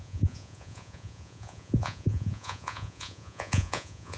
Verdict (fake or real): fake